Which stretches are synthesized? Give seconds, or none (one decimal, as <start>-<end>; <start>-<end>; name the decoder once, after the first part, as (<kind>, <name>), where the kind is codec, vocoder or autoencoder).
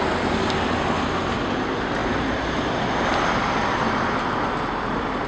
2.0-2.6 (vocoder, BigVGAN v2)